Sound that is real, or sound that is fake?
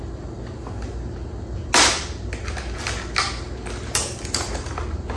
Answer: real